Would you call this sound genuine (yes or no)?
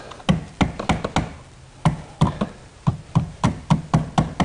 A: yes